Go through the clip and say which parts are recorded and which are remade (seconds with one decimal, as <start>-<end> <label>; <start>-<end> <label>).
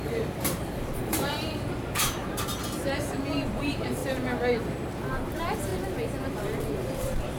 0.0-2.6 remade; 2.6-3.3 recorded; 3.3-4.0 remade; 4.0-5.3 recorded; 5.3-5.7 remade; 5.7-6.3 recorded; 6.3-7.4 remade